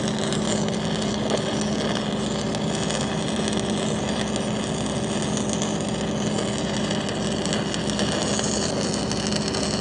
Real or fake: real